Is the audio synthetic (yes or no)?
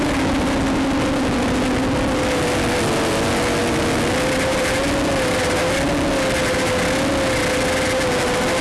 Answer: no